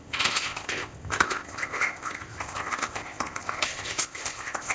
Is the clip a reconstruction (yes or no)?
yes